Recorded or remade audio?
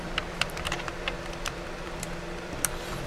remade